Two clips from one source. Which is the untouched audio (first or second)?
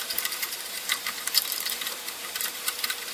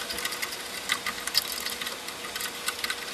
second